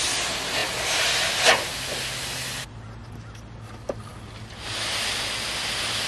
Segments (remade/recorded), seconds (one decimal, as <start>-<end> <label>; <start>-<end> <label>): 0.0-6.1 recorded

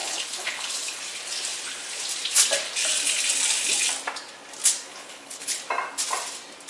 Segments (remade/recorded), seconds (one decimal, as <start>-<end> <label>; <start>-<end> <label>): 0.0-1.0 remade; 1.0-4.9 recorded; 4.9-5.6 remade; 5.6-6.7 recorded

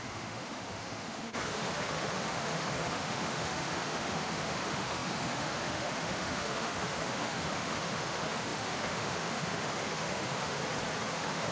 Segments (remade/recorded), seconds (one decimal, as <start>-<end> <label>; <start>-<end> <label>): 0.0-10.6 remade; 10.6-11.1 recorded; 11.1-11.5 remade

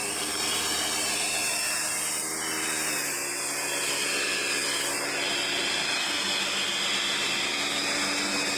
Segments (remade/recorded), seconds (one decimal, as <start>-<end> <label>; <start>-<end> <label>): 0.0-1.2 remade; 1.2-5.6 recorded; 5.6-7.5 remade; 7.5-8.6 recorded

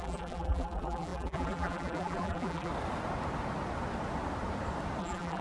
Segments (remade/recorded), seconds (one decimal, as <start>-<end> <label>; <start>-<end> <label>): 0.0-2.7 remade; 2.7-5.0 recorded; 5.0-5.4 remade

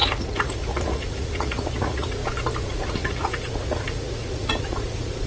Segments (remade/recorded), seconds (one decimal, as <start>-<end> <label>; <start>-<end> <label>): 0.0-2.2 remade; 2.2-2.7 recorded; 2.7-5.3 remade

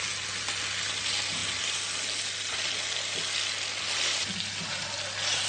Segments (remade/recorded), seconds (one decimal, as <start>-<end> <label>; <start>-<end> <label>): 0.0-5.5 recorded

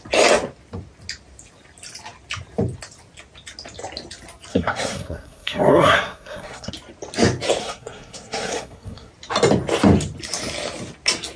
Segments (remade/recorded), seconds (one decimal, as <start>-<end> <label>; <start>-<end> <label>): 0.0-4.5 recorded; 4.5-6.7 remade; 6.7-7.6 recorded; 7.6-9.1 remade; 9.1-11.4 recorded